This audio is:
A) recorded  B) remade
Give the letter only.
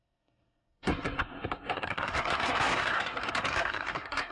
B